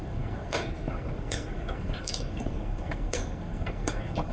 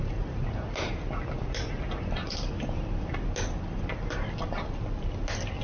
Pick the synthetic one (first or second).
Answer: first